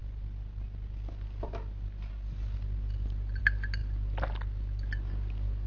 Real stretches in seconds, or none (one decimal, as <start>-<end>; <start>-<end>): 0.0-5.7